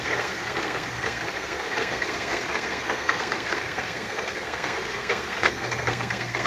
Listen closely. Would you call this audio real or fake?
fake